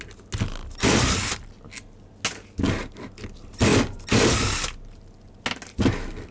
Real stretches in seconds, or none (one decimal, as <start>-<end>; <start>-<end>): 0.0-6.3